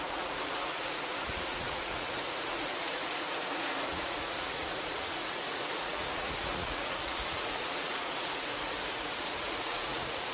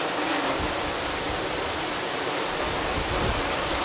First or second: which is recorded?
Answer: second